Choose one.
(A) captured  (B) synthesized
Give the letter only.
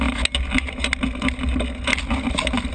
A